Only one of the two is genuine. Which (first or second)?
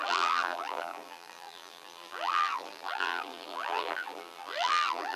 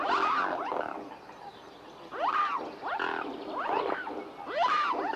second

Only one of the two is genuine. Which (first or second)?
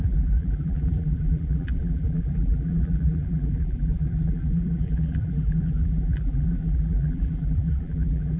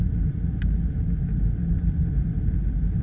second